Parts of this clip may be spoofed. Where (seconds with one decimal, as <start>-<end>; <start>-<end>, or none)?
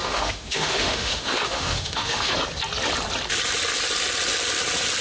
0.0-2.3